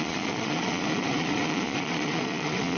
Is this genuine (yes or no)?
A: no